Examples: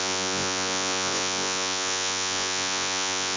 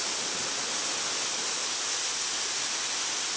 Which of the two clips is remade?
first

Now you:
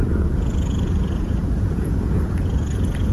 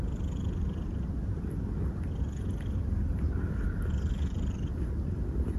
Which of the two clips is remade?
first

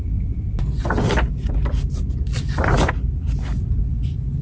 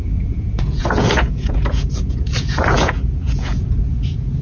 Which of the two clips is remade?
second